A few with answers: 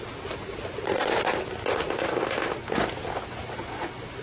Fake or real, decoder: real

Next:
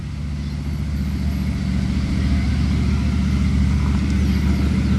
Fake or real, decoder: real